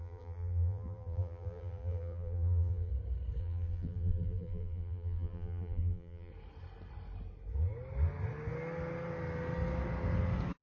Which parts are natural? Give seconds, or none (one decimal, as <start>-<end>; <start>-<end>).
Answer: 2.9-3.4; 6.3-10.6